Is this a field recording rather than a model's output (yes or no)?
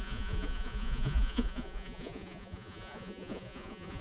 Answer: no